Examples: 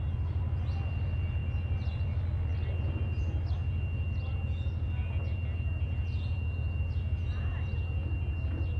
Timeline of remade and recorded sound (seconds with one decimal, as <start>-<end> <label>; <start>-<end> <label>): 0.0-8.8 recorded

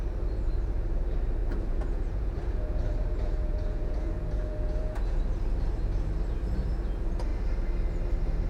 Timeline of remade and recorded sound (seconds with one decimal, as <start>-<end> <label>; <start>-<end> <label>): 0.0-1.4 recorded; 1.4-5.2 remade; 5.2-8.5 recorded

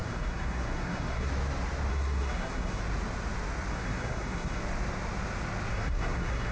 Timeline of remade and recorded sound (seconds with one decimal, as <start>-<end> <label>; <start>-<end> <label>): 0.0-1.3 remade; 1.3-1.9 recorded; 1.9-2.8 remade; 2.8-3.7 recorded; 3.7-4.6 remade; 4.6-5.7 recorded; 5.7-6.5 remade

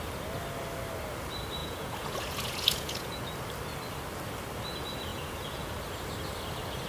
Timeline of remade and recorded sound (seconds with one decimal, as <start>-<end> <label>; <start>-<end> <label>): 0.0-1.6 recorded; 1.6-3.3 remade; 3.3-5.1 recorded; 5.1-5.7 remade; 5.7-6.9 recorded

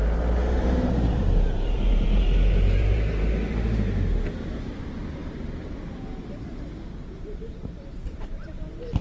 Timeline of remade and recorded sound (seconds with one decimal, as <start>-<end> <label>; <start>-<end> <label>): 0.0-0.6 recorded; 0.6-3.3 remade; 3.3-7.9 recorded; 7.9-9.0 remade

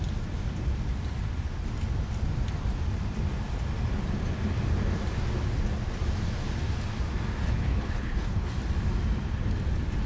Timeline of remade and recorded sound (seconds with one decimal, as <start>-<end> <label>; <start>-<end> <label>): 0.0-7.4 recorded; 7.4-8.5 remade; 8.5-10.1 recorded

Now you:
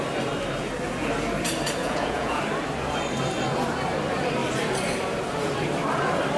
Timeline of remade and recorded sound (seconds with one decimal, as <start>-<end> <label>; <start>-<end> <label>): 0.0-1.8 recorded; 1.8-2.4 remade; 2.4-6.4 recorded

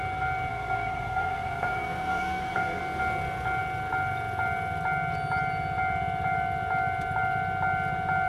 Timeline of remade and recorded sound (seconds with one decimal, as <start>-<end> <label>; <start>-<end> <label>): 0.0-0.5 recorded; 0.5-2.8 remade; 2.8-8.3 recorded